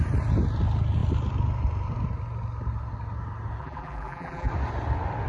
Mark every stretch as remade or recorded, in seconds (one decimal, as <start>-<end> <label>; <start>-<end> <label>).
0.0-3.6 recorded; 3.6-4.5 remade; 4.5-5.3 recorded